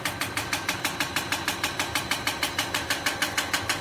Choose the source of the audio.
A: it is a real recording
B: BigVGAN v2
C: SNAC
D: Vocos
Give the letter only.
A